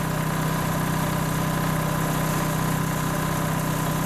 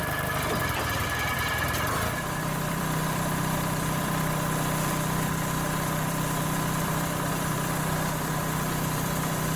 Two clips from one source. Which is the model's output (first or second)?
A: second